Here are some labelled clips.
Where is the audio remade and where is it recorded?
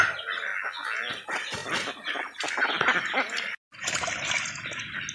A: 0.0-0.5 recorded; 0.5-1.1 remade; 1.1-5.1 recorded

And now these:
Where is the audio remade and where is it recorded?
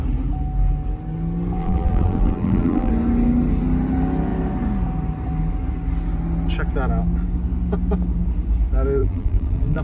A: 0.0-1.6 recorded; 1.6-2.9 remade; 2.9-9.0 recorded; 9.0-9.8 remade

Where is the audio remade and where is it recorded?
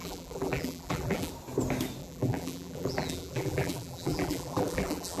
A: 0.0-1.3 remade; 1.3-2.0 recorded; 2.0-5.2 remade